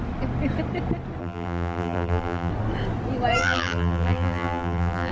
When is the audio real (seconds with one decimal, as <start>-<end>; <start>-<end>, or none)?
0.0-1.2; 2.5-3.4